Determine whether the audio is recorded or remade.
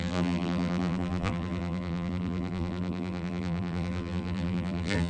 remade